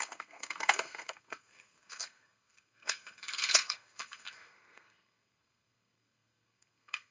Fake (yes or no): yes